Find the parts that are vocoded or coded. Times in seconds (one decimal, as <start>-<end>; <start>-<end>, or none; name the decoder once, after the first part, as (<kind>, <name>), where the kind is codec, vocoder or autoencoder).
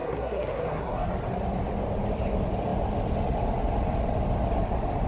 0.0-1.1 (codec, SNAC)